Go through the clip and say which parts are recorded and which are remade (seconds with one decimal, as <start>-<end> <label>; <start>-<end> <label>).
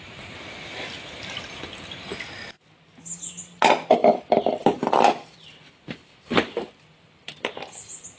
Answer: 0.0-4.0 recorded; 4.0-7.4 remade; 7.4-8.2 recorded